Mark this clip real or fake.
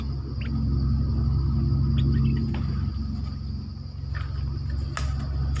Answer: real